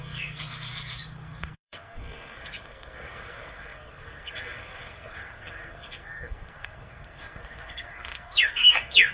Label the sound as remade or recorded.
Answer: remade